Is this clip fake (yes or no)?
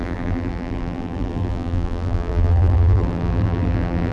yes